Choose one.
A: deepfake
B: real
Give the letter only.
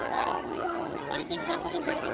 A